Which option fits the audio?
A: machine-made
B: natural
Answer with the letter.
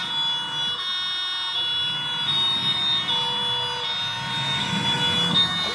B